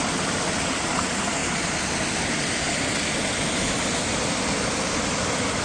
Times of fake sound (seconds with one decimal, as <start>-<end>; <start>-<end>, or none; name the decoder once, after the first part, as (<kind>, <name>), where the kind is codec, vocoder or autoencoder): none